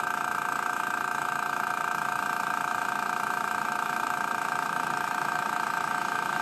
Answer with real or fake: fake